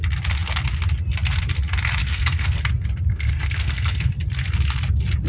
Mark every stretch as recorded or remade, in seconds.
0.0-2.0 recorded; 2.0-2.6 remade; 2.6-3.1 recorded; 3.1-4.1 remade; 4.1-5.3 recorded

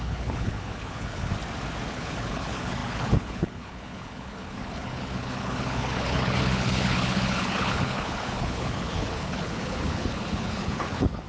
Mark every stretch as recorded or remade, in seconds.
0.0-1.3 remade; 1.3-1.9 recorded; 1.9-11.3 remade

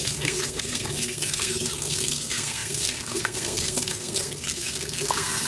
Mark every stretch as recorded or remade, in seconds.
0.0-5.5 remade

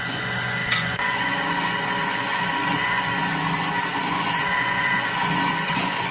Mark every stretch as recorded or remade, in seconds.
0.0-6.1 remade

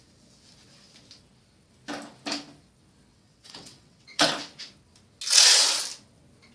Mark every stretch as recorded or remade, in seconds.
0.0-3.1 recorded; 3.1-4.3 remade; 4.3-6.5 recorded

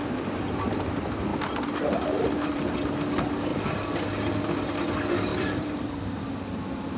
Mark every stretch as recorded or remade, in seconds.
0.0-1.3 recorded; 1.3-2.9 remade; 2.9-5.3 recorded; 5.3-6.2 remade; 6.2-7.0 recorded